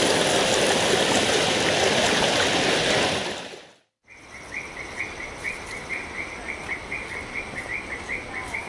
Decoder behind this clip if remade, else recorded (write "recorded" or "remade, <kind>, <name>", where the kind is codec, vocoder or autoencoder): recorded